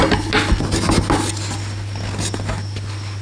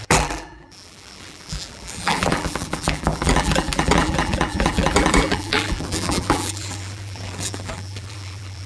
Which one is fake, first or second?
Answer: second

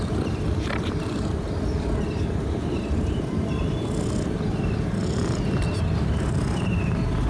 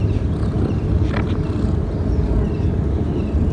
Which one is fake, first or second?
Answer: first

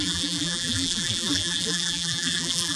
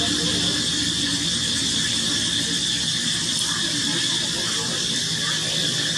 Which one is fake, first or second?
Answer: first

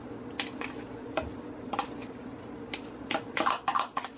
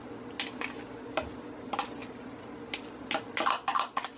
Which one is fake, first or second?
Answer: first